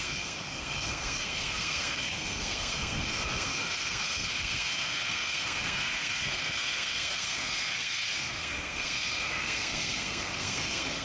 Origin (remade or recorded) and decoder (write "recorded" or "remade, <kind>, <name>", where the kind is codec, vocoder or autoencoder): remade, codec, SNAC